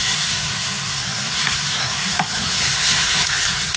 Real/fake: fake